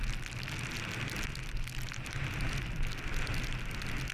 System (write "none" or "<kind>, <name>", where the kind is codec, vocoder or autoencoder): none